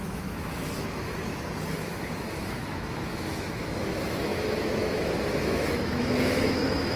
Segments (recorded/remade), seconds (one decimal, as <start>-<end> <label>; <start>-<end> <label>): 0.0-1.3 remade; 1.3-1.8 recorded; 1.8-7.0 remade